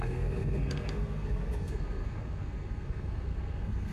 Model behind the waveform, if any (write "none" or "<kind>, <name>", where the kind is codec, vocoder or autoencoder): codec, SNAC